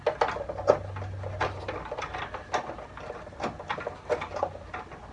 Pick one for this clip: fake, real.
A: real